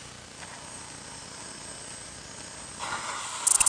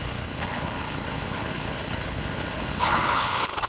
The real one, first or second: first